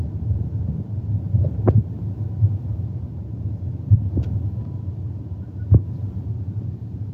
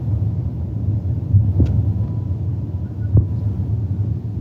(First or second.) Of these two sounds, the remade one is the first